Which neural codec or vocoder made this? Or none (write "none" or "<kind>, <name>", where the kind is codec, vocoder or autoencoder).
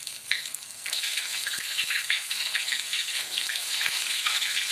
codec, SNAC